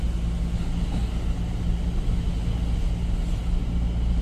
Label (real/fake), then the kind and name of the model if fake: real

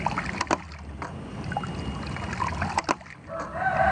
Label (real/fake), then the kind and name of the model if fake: real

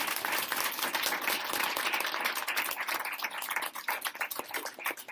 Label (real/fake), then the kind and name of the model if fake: real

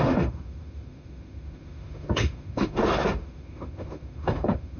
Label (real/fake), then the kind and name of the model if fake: fake, autoencoder, DAC-VAE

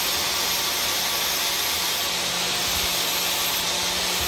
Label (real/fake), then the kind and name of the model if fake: real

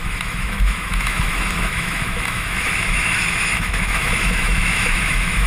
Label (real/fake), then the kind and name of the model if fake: fake, autoencoder, DAC-VAE